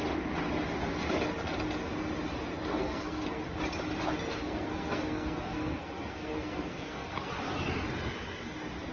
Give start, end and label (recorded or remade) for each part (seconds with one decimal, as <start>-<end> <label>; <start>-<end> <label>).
0.0-2.7 recorded; 2.7-3.4 remade; 3.4-4.3 recorded; 4.3-7.3 remade; 7.3-8.9 recorded